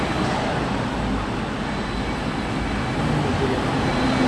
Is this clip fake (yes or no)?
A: no